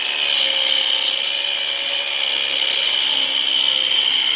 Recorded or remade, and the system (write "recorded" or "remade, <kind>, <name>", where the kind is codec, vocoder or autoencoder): recorded